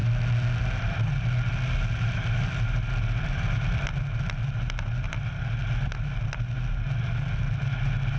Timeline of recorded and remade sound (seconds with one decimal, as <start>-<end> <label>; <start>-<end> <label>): 0.0-8.2 recorded